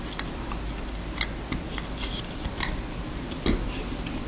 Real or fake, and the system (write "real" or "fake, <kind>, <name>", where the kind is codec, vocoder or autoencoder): real